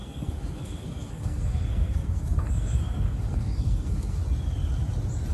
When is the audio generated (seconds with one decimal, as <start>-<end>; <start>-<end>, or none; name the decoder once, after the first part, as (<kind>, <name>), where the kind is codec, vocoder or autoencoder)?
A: 0.0-4.2 (codec, SNAC)